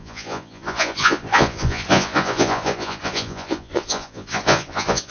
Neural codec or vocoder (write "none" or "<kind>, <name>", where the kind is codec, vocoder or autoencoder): vocoder, Vocos